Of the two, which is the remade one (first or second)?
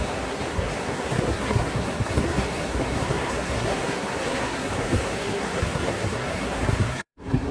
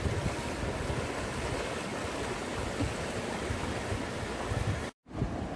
first